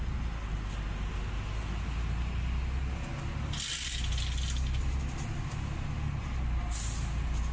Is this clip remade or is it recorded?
recorded